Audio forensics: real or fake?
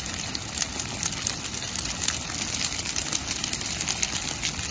real